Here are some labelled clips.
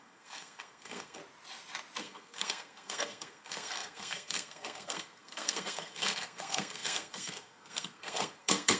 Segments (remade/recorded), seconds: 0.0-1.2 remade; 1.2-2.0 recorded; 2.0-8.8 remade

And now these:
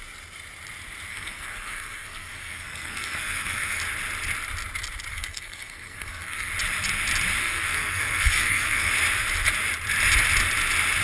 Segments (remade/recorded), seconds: 0.0-1.1 recorded; 1.1-3.8 remade; 3.8-5.1 recorded; 5.1-6.5 remade; 6.5-7.4 recorded; 7.4-8.9 remade; 8.9-11.0 recorded

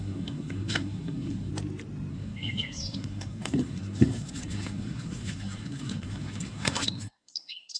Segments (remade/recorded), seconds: 0.0-1.5 remade; 1.5-2.1 recorded; 2.1-7.8 remade